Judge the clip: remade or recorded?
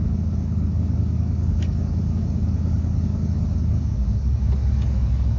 remade